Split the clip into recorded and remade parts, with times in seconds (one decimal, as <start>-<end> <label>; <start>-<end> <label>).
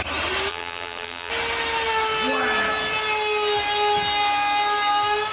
0.0-0.5 recorded; 0.5-1.3 remade; 1.3-5.3 recorded